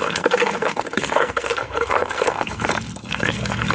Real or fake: fake